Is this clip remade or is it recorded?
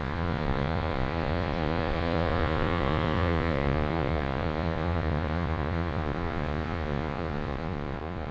remade